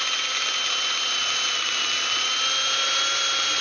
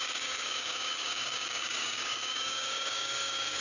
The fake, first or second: second